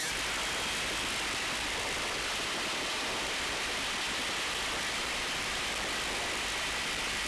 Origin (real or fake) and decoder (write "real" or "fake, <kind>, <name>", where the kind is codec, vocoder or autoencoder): real